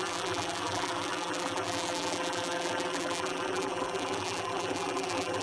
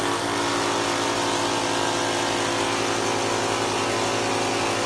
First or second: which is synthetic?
first